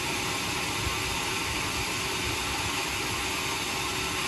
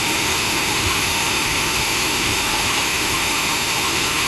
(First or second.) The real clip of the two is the first